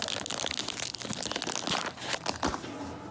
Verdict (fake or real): real